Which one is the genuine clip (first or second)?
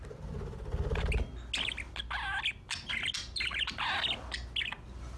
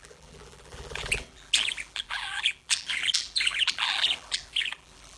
first